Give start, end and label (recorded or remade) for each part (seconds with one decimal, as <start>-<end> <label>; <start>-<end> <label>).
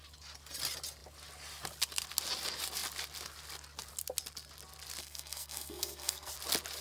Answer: 0.0-5.0 recorded; 5.0-6.3 remade; 6.3-6.8 recorded